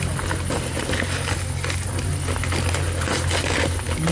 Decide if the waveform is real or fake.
real